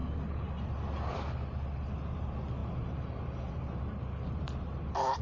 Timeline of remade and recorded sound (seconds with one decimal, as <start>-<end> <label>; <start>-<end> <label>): 0.0-5.2 recorded